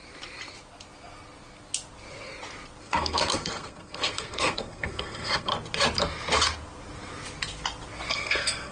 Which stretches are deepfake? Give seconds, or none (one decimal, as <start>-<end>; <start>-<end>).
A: 2.8-5.5; 8.1-8.7